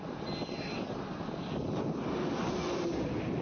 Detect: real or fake real